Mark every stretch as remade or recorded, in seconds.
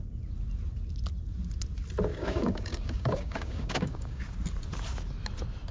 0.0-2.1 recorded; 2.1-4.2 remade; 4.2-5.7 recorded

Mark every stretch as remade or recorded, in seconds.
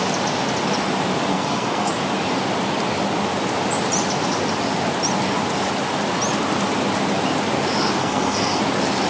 0.0-1.3 recorded; 1.3-1.9 remade; 1.9-8.0 recorded; 8.0-8.6 remade; 8.6-9.1 recorded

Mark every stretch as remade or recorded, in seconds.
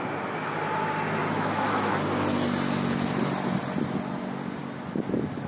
0.0-1.2 recorded; 1.2-1.9 remade; 1.9-5.5 recorded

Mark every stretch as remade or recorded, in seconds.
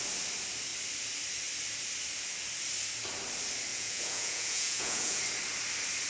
0.0-3.7 recorded; 3.7-5.2 remade; 5.2-6.1 recorded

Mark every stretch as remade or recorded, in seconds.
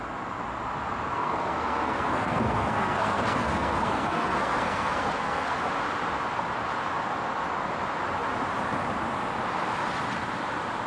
0.0-1.1 recorded; 1.1-5.6 remade; 5.6-10.9 recorded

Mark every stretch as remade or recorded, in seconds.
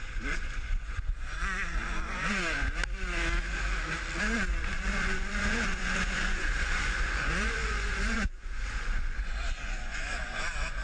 0.0-2.8 remade; 2.8-4.2 recorded; 4.2-10.8 remade